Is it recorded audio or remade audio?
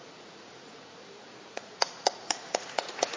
remade